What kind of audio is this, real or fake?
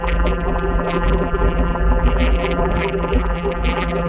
fake